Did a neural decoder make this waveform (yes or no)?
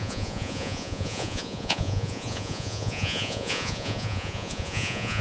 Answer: yes